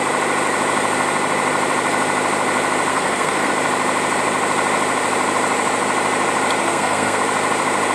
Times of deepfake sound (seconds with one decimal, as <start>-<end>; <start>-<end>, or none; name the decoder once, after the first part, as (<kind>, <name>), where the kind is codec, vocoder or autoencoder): 2.9-3.5 (codec, SNAC); 6.6-7.2